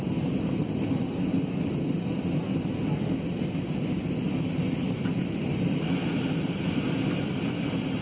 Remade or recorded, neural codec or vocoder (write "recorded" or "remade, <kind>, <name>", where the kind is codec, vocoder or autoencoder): recorded